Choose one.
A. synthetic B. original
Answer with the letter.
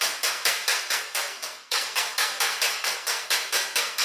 A